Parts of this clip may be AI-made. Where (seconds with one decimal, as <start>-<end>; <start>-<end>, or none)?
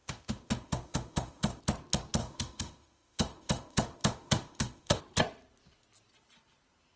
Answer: 0.0-1.6; 2.2-5.0